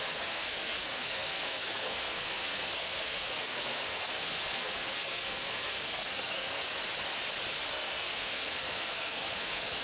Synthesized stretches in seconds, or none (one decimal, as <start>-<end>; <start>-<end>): 0.0-6.8; 7.6-9.8